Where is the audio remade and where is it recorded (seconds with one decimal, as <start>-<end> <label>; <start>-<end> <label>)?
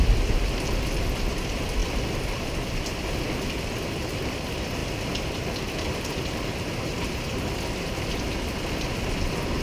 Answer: 0.0-6.8 recorded; 6.8-7.5 remade; 7.5-9.6 recorded